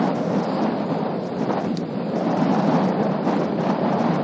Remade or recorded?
recorded